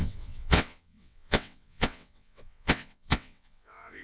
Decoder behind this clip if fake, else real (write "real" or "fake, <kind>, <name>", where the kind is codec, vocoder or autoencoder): fake, vocoder, WaveNeXt